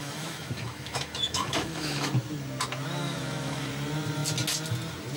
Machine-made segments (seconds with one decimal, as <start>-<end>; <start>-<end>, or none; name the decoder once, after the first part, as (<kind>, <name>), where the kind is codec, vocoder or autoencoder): 0.0-2.1 (autoencoder, DAC-VAE); 3.0-3.7